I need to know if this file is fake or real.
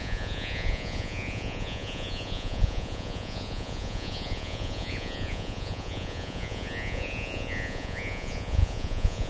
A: fake